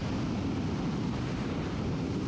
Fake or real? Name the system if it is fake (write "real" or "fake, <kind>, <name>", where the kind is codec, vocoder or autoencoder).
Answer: real